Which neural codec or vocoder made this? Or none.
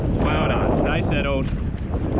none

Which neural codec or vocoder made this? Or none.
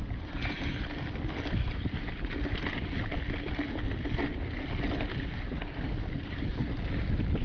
none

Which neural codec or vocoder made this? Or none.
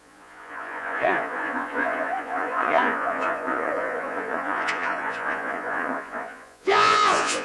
vocoder, Vocos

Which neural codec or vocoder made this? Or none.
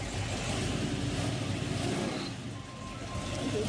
none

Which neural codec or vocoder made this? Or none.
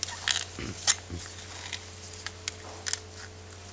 none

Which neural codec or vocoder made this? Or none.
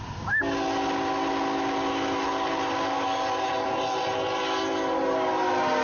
none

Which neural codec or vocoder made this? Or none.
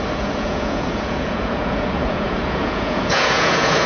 vocoder, Vocos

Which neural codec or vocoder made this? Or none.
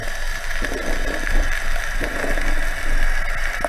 none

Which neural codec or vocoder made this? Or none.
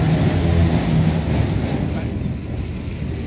none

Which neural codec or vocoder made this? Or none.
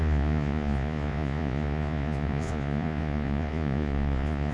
vocoder, Vocos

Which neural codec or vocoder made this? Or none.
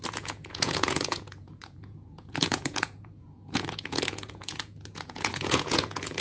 vocoder, Vocos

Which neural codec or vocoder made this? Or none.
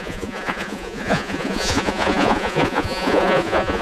vocoder, Vocos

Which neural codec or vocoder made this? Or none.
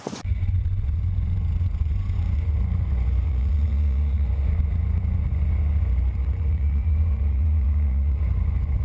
vocoder, Vocos